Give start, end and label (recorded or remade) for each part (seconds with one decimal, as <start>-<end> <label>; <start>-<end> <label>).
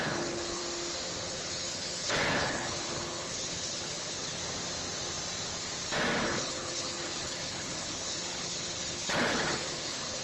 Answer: 0.0-0.6 remade; 0.6-1.2 recorded; 1.2-4.4 remade; 4.4-6.2 recorded; 6.2-10.2 remade